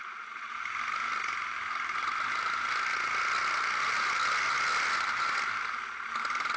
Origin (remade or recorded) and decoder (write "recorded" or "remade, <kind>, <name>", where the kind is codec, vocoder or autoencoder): recorded